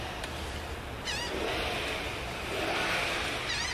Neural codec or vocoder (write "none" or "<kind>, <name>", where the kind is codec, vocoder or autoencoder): none